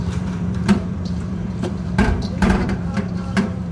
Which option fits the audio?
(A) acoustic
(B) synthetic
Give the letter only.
B